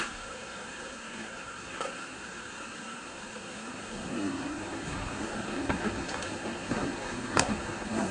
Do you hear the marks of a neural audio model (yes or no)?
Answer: yes